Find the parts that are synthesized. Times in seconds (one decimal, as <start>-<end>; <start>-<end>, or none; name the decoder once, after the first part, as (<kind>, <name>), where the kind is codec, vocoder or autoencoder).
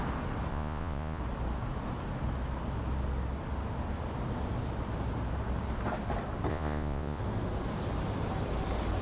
0.5-1.2 (vocoder, Vocos); 6.5-7.2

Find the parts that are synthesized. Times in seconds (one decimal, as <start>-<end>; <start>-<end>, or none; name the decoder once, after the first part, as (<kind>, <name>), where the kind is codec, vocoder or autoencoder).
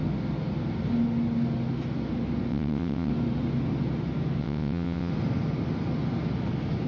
2.5-3.1 (vocoder, WaveNeXt); 4.4-5.1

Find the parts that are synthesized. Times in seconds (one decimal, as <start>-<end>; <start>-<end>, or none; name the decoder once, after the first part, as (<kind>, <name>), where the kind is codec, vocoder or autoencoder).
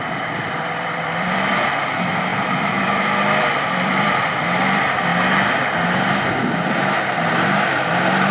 0.0-5.1 (vocoder, BigVGAN v2); 7.3-8.3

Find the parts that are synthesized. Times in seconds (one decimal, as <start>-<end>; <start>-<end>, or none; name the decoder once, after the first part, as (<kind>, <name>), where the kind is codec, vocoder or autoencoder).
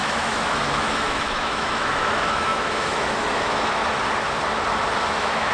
0.0-3.8 (autoencoder, DAC-VAE); 5.1-5.5